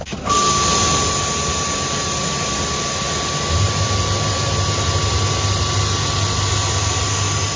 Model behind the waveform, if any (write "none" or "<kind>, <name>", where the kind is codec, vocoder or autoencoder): none